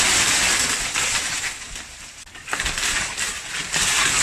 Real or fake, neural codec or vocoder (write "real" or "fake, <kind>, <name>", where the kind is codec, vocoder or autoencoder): real